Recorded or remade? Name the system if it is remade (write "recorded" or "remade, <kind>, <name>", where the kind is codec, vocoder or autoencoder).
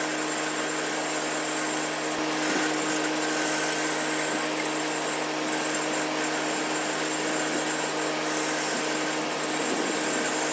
recorded